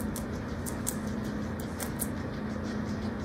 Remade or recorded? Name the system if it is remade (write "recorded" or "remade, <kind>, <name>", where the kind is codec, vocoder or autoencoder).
recorded